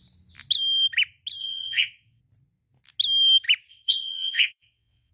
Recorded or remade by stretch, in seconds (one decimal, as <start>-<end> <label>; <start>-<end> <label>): 0.0-1.4 recorded; 1.4-2.2 remade; 2.2-3.7 recorded; 3.7-5.1 remade